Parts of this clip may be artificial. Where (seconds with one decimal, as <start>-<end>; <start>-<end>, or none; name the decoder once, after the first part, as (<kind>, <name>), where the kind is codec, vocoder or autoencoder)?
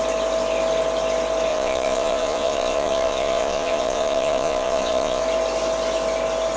1.5-5.2 (vocoder, Vocos)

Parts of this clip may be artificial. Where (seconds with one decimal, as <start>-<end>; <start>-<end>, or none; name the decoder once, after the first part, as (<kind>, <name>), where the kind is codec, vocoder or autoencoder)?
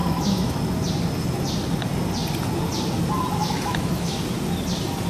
0.0-0.6 (autoencoder, DAC-VAE); 3.4-4.2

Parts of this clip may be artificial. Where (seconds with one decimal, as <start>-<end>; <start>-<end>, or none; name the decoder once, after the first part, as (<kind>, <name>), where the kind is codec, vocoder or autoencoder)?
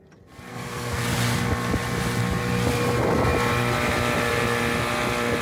0.5-1.0 (codec, SNAC)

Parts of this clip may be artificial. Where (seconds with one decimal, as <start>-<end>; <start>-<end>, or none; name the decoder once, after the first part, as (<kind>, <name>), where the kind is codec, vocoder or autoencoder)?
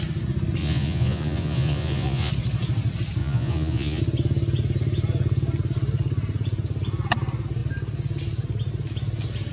0.6-2.3 (vocoder, Vocos); 3.2-4.0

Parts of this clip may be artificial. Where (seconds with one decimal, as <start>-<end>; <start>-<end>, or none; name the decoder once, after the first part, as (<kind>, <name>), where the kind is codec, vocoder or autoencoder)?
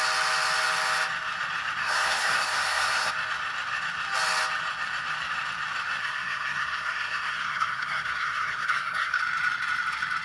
1.8-3.1 (codec, SNAC); 6.0-9.2